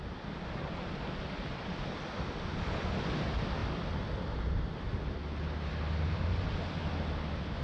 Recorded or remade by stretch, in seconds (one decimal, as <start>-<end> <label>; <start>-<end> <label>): 0.0-3.6 remade; 3.6-7.6 recorded